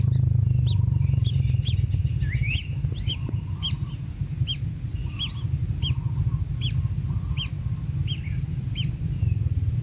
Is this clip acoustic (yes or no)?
yes